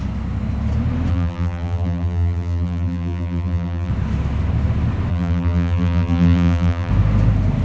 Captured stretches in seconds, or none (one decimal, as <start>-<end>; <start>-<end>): 0.0-1.1; 3.9-5.1; 6.9-7.6

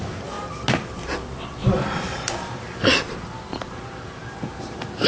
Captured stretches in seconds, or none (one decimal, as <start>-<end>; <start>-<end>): 0.0-1.6

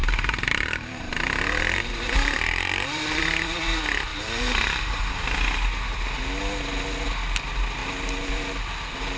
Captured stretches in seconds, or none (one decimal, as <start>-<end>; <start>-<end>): 3.2-4.1; 5.0-7.8; 8.4-9.2

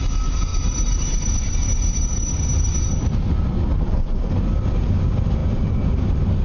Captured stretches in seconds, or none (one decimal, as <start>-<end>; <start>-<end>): 0.0-0.5; 4.3-6.4

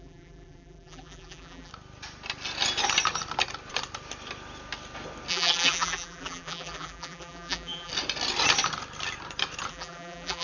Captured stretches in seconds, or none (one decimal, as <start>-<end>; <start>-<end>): 1.7-5.3; 7.9-9.7

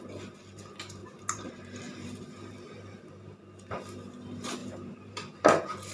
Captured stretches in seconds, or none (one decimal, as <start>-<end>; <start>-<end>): 0.0-1.0; 3.4-4.6; 5.4-5.9

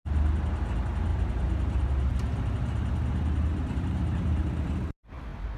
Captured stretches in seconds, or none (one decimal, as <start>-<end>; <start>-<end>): 0.0-1.1; 2.1-3.5; 4.7-5.6